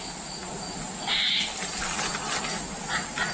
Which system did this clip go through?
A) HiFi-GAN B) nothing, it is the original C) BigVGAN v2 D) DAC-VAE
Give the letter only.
B